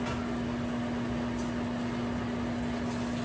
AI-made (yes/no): no